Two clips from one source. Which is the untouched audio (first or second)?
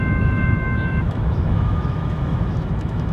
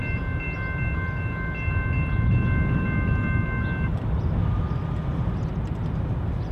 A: second